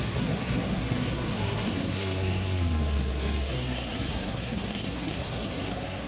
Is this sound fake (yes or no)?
yes